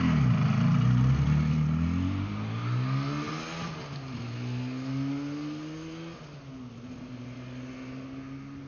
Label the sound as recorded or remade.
recorded